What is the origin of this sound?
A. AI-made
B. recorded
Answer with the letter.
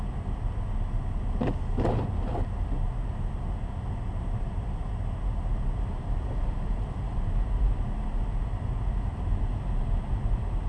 B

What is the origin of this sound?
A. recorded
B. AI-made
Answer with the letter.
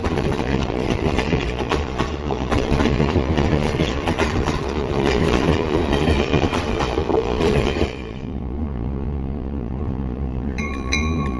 B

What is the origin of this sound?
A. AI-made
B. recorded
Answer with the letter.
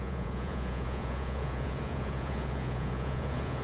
A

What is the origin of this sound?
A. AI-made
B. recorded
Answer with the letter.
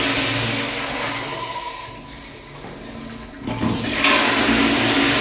B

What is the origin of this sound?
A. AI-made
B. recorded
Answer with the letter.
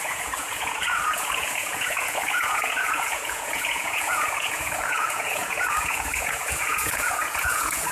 A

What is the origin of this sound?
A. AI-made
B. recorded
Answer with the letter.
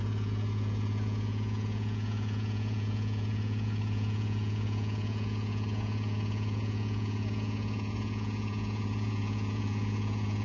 A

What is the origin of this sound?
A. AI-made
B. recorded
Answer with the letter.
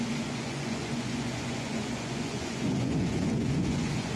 A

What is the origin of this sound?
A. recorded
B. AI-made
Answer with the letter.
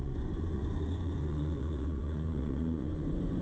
B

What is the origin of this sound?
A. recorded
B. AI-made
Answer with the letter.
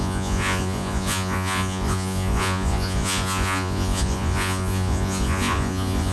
B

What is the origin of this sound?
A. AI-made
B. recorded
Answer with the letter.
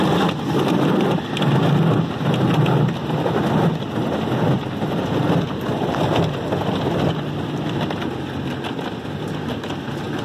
B